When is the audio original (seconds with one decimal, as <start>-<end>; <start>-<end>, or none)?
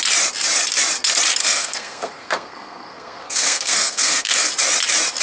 0.0-1.4; 4.5-5.2